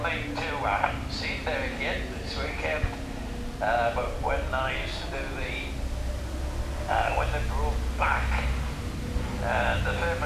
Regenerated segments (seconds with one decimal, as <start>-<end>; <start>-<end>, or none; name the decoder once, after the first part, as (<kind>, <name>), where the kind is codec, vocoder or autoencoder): none